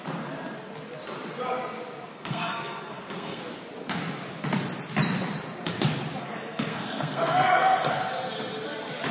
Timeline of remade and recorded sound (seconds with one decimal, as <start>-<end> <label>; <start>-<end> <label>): 0.0-2.1 recorded; 2.1-3.4 remade; 3.4-6.2 recorded; 6.2-7.9 remade; 7.9-9.1 recorded